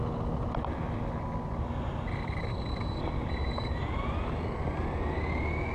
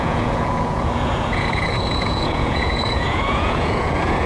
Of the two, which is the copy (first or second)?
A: second